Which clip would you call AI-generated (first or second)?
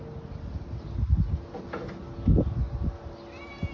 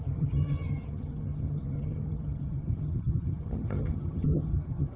second